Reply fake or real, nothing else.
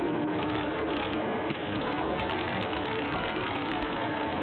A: fake